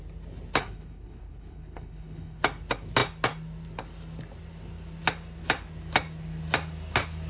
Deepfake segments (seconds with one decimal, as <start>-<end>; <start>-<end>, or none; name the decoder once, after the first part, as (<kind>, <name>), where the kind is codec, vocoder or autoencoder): 0.6-2.4 (codec, HILCodec)